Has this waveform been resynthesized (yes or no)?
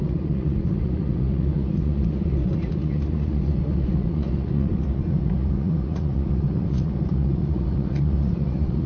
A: yes